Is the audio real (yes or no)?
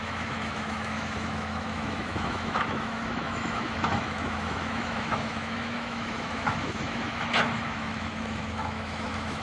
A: no